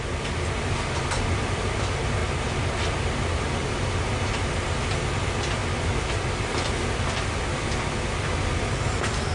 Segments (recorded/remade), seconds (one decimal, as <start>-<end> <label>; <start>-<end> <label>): 0.0-9.3 recorded